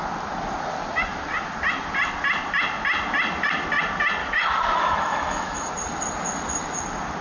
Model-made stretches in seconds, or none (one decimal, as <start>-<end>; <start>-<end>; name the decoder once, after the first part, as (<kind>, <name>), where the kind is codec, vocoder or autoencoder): 4.2-5.7 (autoencoder, DAC-VAE)